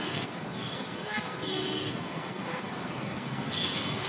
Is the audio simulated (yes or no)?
yes